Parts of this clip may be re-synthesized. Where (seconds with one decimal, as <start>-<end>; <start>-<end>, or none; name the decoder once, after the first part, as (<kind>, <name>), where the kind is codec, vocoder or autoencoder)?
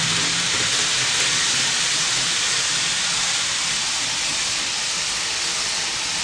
4.3-4.9 (vocoder, BigVGAN v2)